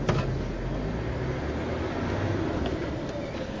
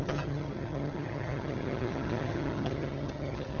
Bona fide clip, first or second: first